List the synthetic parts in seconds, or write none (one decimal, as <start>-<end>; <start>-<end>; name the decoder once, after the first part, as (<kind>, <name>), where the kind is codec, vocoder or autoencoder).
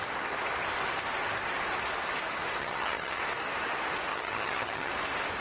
2.6-3.2 (vocoder, HiFi-GAN); 4.1-4.9